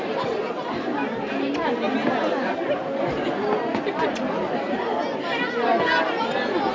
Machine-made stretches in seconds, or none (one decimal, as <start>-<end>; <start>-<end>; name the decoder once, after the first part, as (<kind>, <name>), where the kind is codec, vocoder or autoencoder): none